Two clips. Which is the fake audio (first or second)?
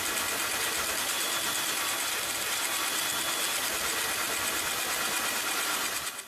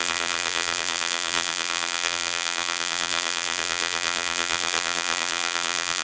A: second